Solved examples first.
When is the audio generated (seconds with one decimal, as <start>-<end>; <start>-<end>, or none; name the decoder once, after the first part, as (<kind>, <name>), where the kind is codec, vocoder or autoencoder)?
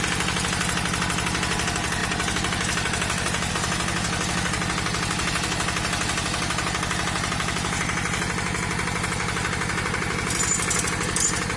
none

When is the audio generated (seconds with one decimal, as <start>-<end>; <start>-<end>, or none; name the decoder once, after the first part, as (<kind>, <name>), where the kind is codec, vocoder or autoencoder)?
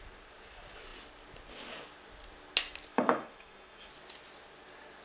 2.9-3.9 (autoencoder, DAC-VAE)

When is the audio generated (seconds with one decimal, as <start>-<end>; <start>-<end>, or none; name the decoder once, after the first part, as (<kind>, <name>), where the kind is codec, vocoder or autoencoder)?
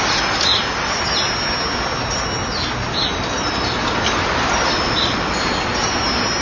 none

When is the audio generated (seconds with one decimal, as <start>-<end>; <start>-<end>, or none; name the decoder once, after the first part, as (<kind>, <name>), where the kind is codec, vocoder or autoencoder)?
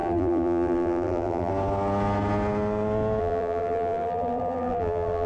0.0-1.5 (vocoder, BigVGAN v2); 3.2-5.3